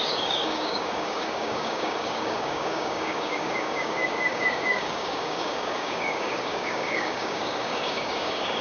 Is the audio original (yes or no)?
no